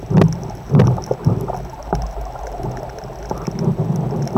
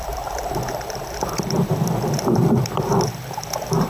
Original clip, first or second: first